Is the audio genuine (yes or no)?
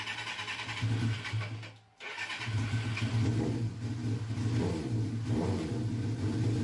yes